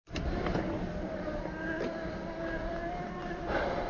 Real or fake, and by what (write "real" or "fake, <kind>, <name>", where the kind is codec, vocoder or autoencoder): fake, vocoder, BigVGAN v2